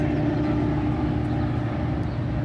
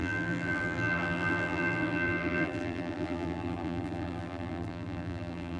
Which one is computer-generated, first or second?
second